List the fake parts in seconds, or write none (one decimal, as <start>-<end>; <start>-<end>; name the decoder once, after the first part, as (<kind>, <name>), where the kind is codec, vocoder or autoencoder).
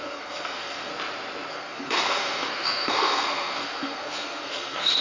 0.0-0.9 (codec, SNAC); 1.5-5.0